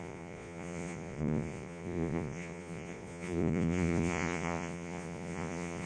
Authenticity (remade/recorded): remade